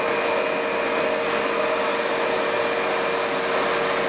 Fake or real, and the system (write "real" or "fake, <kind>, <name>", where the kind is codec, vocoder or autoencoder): real